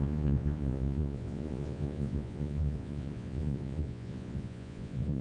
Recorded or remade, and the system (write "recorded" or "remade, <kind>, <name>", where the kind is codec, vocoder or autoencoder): remade, vocoder, Vocos